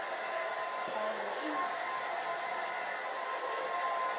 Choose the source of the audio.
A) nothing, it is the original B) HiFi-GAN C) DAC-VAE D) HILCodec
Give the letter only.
A